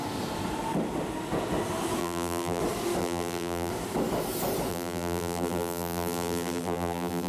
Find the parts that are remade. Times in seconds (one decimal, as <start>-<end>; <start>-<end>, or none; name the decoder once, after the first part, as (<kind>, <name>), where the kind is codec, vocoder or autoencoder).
2.0-2.6 (vocoder, BigVGAN v2); 3.0-3.7; 4.7-7.3